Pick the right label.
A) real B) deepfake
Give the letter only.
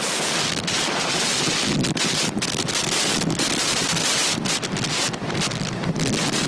B